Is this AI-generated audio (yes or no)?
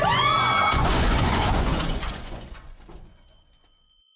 yes